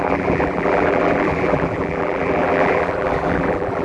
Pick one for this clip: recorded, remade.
remade